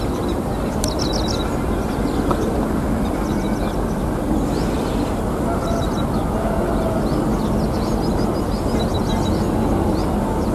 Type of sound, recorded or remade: recorded